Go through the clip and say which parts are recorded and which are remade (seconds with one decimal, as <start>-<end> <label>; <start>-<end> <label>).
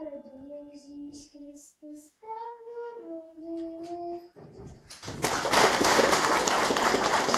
0.0-1.2 recorded; 1.2-3.4 remade; 3.4-5.6 recorded; 5.6-6.3 remade; 6.3-7.4 recorded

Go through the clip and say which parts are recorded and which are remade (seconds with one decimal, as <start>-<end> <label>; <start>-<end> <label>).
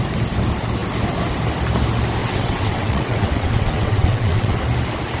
0.0-2.2 recorded; 2.2-4.6 remade; 4.6-5.2 recorded